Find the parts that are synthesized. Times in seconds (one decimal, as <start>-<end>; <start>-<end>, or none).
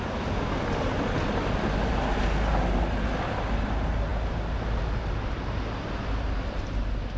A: none